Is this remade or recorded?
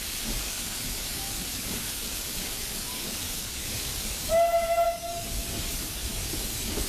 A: remade